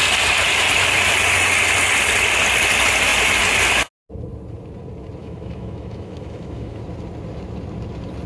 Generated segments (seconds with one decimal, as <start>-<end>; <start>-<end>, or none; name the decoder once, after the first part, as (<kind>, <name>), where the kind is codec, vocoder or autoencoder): 5.2-6.8 (autoencoder, DAC-VAE)